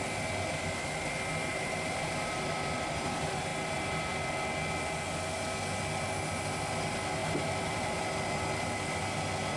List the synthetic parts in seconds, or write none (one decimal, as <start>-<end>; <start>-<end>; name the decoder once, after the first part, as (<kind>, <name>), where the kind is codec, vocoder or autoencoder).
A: 1.5-2.5 (vocoder, BigVGAN v2); 7.2-8.0